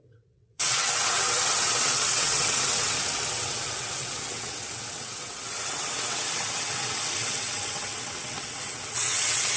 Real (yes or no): no